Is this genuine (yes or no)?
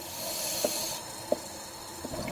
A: yes